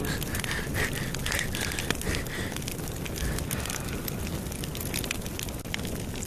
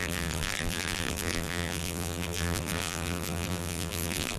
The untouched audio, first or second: first